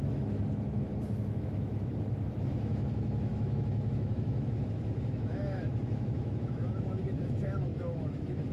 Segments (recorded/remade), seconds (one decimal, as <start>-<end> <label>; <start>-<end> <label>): 0.0-8.5 remade